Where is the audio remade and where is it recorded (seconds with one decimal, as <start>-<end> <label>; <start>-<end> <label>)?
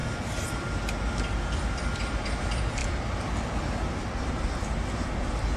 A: 0.0-5.6 recorded